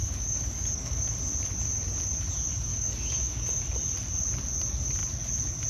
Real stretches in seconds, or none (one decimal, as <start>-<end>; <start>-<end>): 1.0-2.7; 3.6-5.7